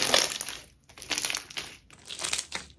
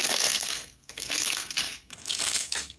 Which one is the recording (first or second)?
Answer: first